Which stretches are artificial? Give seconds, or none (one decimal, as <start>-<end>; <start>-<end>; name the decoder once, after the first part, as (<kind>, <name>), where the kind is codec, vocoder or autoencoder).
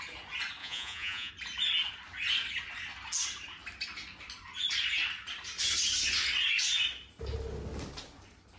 0.6-1.3 (vocoder, Vocos)